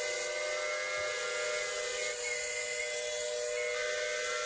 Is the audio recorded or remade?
recorded